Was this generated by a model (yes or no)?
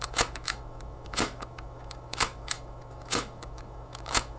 yes